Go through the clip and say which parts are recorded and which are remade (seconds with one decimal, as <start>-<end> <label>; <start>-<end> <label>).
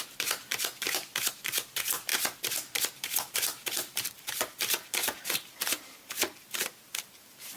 0.0-2.1 remade; 2.1-2.8 recorded; 2.8-7.6 remade